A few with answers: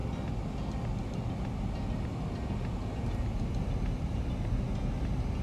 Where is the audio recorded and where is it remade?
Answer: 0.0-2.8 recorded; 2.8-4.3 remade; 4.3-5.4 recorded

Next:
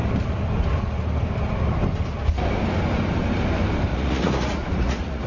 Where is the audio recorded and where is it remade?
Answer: 0.0-3.9 recorded; 3.9-5.3 remade

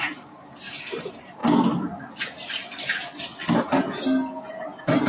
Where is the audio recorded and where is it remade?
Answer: 0.0-1.4 remade; 1.4-4.5 recorded; 4.5-5.1 remade

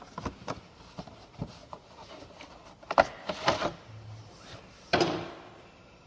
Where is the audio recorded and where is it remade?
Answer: 0.0-6.1 recorded

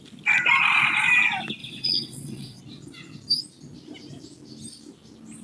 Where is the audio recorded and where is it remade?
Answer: 0.0-1.6 recorded; 1.6-2.6 remade; 2.6-5.4 recorded

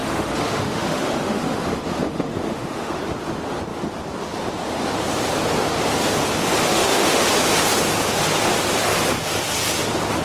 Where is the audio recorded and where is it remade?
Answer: 0.0-3.0 remade; 3.0-6.6 recorded; 6.6-7.2 remade; 7.2-10.2 recorded

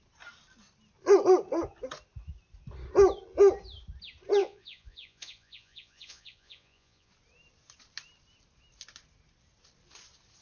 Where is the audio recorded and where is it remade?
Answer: 0.0-4.4 recorded; 4.4-7.1 remade; 7.1-10.4 recorded